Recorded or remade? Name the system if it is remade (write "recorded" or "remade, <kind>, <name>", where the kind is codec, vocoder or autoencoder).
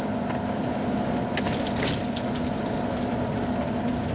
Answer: recorded